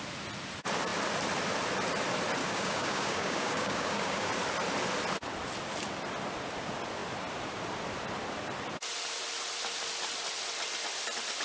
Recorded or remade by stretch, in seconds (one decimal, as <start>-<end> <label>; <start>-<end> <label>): 0.0-2.4 recorded; 2.4-4.3 remade; 4.3-11.4 recorded